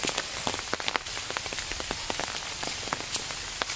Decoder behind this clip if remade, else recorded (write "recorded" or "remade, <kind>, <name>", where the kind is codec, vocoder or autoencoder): recorded